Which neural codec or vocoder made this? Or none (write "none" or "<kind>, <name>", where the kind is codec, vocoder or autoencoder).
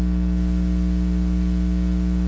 none